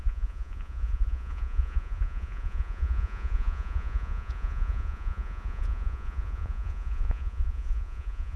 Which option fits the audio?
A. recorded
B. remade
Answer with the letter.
B